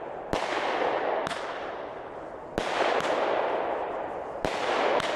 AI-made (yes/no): no